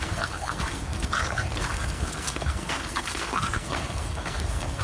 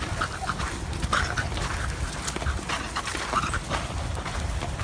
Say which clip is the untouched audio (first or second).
second